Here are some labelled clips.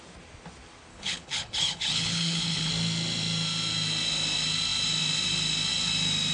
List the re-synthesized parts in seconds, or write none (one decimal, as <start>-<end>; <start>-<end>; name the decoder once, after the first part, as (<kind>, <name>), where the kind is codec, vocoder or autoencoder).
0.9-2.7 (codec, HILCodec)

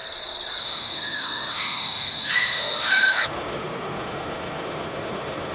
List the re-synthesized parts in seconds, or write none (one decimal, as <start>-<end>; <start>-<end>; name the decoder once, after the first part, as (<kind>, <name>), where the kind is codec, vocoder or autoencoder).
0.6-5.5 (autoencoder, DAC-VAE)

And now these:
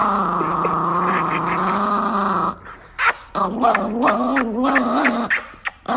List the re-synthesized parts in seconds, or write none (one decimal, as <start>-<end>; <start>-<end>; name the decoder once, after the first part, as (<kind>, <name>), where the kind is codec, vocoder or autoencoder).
none